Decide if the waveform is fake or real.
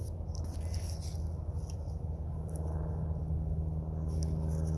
real